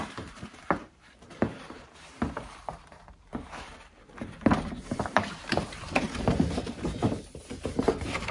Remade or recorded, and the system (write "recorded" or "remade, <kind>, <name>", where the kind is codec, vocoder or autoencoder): remade, vocoder, BigVGAN v2